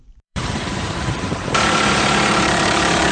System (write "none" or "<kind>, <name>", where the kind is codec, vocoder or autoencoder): vocoder, BigVGAN v2